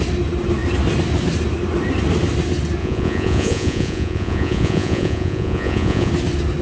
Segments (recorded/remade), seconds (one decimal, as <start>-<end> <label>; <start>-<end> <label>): 0.0-2.8 recorded; 2.8-6.1 remade; 6.1-6.6 recorded